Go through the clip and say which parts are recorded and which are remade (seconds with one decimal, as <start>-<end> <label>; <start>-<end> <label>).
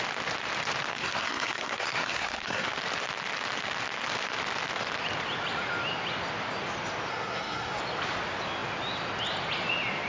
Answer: 0.0-0.9 recorded; 0.9-2.7 remade; 2.7-7.1 recorded; 7.1-7.8 remade; 7.8-10.1 recorded